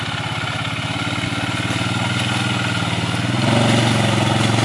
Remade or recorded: recorded